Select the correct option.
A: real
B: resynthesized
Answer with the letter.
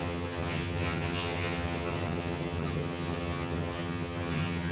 B